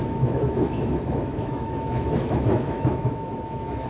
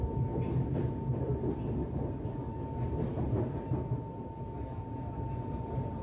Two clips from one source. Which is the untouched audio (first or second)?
second